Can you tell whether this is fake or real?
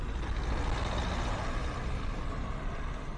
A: real